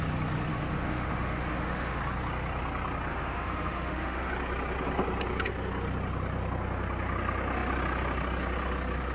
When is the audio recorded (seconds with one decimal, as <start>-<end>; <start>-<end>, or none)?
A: 0.0-0.5; 2.0-3.1; 4.3-9.1